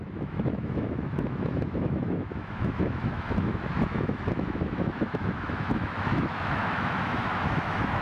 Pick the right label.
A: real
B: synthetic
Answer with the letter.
B